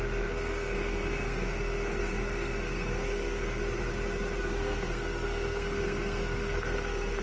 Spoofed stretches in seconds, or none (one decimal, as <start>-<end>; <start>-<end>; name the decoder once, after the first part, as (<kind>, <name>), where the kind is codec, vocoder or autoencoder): 0.0-3.6 (codec, SNAC); 4.4-7.2